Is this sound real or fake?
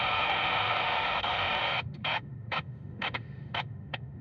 fake